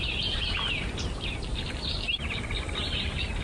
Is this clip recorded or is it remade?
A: recorded